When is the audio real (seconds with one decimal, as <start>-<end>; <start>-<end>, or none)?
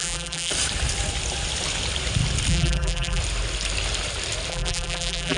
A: 0.5-2.5; 3.2-4.5